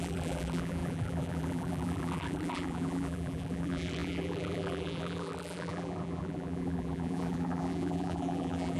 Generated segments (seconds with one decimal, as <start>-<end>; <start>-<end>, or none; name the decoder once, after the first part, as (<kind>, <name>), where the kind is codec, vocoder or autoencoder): 0.0-8.8 (vocoder, BigVGAN v2)